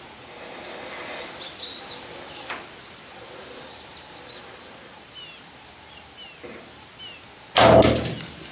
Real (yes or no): yes